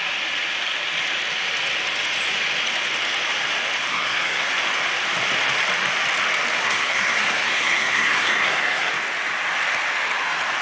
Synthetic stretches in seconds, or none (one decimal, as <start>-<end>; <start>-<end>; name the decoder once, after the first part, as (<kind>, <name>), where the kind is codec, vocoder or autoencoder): 3.9-4.5 (codec, SNAC); 6.6-8.9